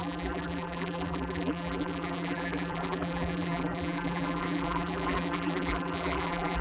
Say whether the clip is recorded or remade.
remade